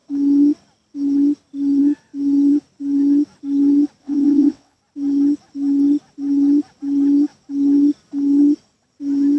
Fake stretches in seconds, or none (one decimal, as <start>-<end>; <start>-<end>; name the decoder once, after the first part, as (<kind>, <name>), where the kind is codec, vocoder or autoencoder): 4.0-4.8 (vocoder, WaveNeXt)